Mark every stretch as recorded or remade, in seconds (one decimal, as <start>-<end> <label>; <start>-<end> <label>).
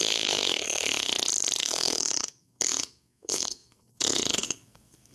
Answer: 0.0-1.1 remade; 1.1-1.6 recorded; 1.6-5.1 remade